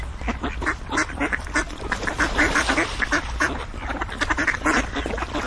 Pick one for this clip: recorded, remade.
recorded